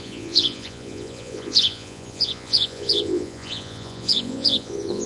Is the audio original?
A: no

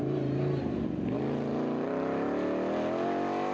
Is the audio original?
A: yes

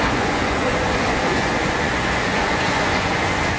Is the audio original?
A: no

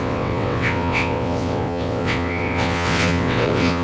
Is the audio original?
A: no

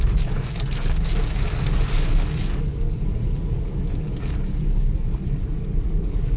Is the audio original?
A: no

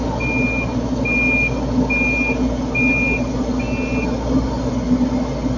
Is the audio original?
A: yes